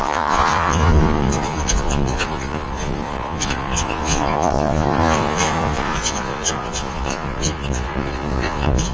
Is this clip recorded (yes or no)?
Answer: no